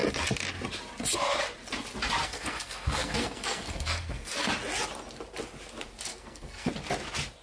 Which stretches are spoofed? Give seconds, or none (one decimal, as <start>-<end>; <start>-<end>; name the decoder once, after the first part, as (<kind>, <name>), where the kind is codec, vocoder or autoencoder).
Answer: 2.2-4.5 (codec, SNAC); 6.1-6.7